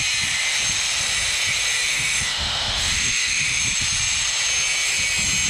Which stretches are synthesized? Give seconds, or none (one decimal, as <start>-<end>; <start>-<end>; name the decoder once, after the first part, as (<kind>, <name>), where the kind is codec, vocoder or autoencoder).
1.9-3.6 (autoencoder, DAC-VAE)